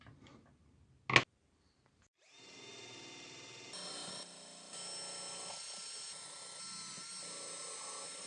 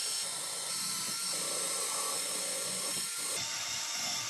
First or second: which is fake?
second